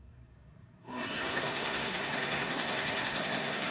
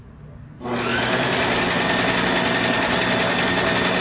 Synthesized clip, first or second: first